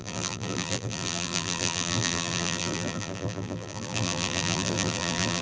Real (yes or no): no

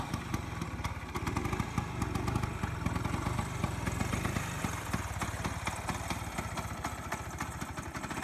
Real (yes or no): yes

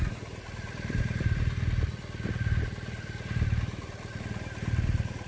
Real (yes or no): no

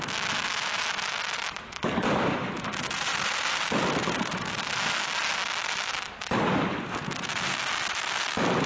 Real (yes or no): yes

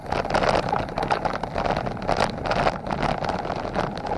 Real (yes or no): yes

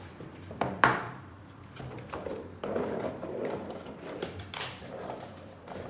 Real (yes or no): no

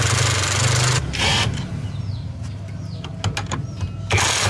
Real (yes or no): yes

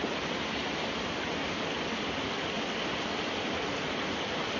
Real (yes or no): yes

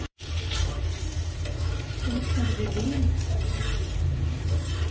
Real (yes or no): no